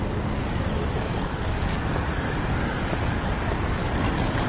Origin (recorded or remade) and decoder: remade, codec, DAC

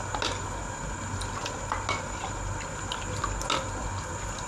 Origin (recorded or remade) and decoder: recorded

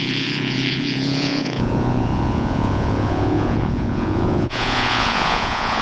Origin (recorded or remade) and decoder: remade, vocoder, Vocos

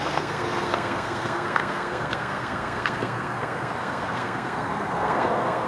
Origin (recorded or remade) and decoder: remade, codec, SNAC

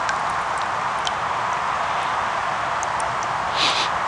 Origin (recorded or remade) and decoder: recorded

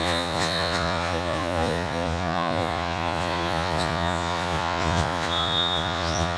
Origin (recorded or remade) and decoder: remade, vocoder, Vocos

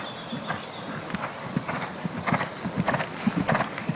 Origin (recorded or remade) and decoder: recorded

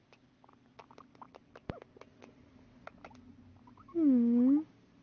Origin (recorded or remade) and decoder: recorded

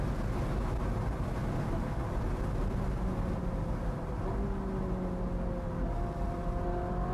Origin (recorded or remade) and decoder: recorded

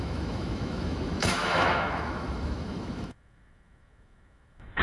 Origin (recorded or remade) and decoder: remade, autoencoder, DAC-VAE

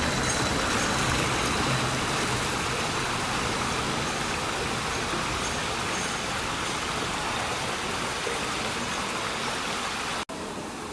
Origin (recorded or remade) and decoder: recorded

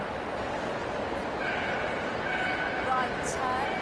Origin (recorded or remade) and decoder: recorded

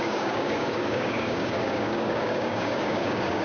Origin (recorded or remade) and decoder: remade, codec, DAC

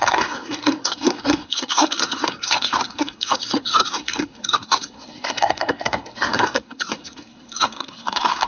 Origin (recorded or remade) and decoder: remade, codec, SNAC